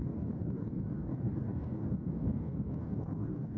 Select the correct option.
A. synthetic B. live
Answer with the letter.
A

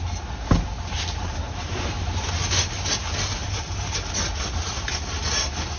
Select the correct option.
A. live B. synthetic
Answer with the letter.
A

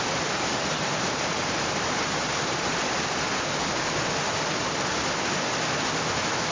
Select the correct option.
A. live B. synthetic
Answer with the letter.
A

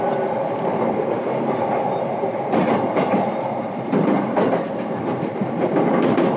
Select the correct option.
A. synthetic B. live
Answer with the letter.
A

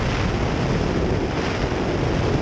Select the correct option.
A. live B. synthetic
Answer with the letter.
A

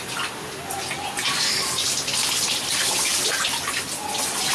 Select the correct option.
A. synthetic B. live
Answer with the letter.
B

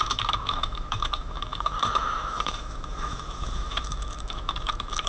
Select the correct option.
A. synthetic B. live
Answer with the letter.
A